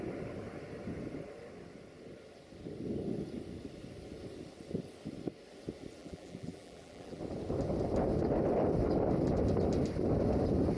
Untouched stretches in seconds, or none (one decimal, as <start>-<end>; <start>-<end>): 0.0-6.0; 7.2-10.8